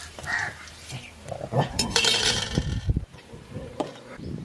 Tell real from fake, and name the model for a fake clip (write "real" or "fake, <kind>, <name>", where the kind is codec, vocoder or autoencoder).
fake, vocoder, BigVGAN v2